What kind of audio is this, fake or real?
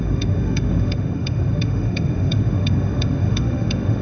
fake